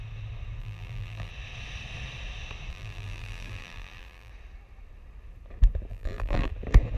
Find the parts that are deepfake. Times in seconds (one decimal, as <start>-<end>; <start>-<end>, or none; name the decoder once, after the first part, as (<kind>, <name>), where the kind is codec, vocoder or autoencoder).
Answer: 0.6-1.3 (vocoder, BigVGAN v2); 2.7-4.3; 5.9-6.5